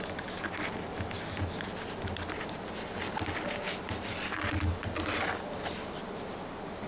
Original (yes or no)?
yes